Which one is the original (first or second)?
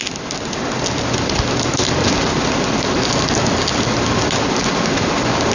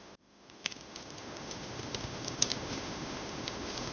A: first